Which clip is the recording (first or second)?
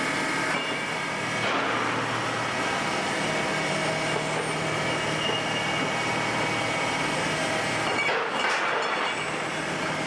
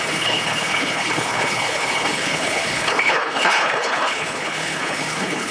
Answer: first